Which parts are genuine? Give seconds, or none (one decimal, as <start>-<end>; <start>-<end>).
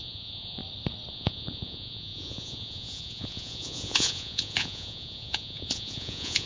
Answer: 0.6-1.1